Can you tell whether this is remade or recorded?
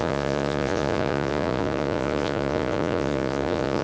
remade